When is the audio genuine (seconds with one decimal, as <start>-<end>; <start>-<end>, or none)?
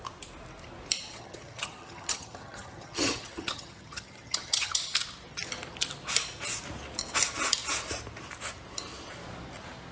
0.0-1.1; 4.8-9.9